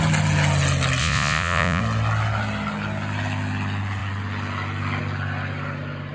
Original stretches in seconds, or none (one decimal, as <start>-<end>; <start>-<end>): 0.0-1.0; 1.8-6.1